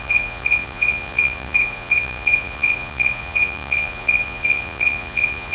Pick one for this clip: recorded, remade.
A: remade